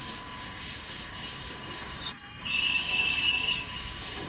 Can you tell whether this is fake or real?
fake